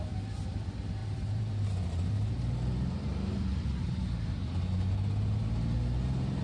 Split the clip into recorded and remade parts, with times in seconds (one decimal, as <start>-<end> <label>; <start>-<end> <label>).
0.0-1.0 recorded; 1.0-3.8 remade; 3.8-6.4 recorded